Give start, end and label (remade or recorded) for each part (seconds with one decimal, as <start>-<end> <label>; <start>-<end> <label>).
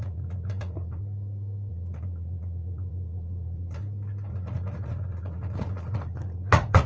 0.0-1.0 remade; 1.0-1.7 recorded; 1.7-3.8 remade; 3.8-4.3 recorded; 4.3-6.9 remade